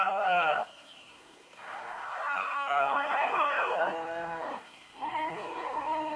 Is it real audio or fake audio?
fake